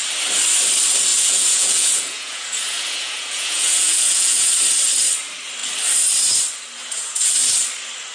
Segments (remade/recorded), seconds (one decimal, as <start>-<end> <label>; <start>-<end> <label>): 0.0-1.1 recorded; 1.1-4.5 remade; 4.5-6.8 recorded; 6.8-7.3 remade; 7.3-8.1 recorded